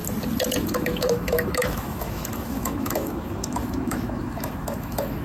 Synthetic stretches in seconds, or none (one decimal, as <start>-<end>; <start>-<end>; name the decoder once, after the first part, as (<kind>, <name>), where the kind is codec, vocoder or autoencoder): 0.6-5.2 (autoencoder, DAC-VAE)